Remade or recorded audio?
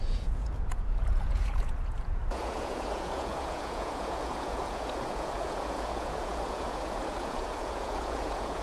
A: remade